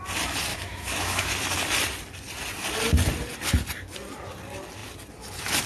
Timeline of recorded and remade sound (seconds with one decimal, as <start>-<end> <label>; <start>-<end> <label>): 0.0-0.5 recorded; 0.5-1.3 remade; 1.3-5.7 recorded